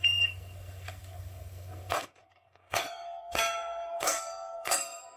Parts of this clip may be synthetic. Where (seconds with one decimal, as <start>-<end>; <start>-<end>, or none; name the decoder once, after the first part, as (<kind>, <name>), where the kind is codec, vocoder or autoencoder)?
0.0-5.2 (codec, SNAC)